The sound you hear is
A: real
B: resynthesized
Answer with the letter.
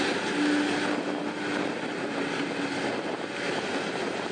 A